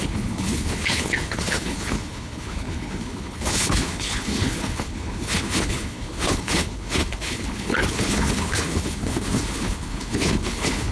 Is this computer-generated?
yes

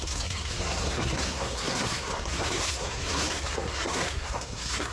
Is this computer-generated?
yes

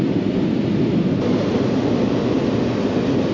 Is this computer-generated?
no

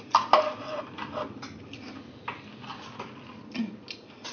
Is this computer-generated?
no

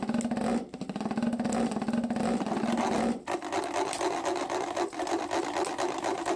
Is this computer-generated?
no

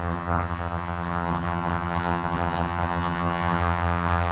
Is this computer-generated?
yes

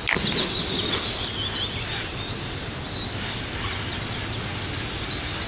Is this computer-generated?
no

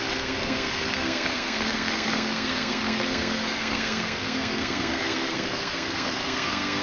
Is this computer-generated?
yes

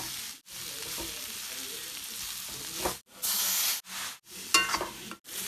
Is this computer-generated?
no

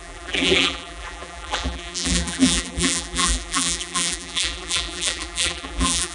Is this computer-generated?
yes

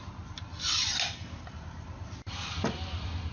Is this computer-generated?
no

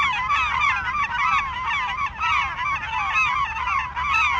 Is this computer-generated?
no